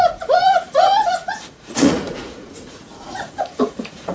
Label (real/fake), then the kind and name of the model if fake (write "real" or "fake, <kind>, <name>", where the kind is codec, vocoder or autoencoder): fake, vocoder, Vocos